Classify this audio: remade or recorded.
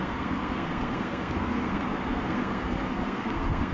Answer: remade